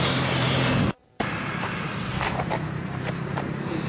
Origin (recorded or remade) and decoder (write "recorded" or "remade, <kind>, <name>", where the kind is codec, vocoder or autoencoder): remade, vocoder, BigVGAN v2